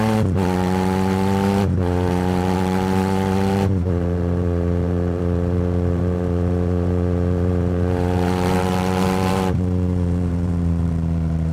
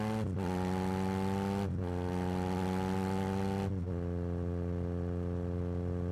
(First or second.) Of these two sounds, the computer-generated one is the first